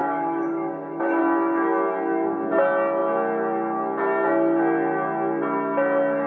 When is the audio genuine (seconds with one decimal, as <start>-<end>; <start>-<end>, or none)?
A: 1.2-6.3